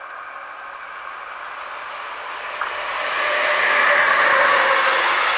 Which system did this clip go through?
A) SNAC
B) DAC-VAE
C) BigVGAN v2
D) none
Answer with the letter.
D